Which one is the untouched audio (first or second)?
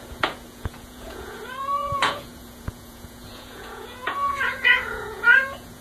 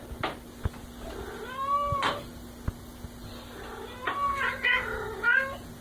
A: second